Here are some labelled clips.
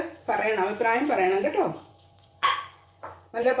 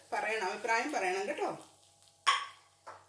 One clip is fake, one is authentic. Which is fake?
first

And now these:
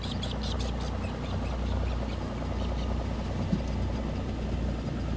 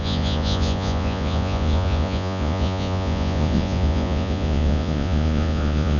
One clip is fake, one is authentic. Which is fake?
second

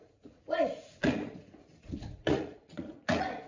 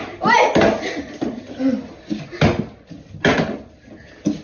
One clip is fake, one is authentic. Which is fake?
first